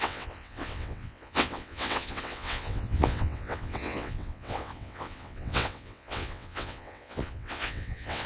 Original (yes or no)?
no